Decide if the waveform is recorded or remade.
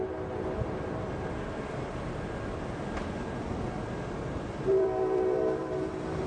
remade